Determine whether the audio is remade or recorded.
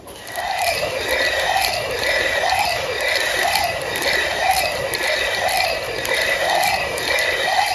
recorded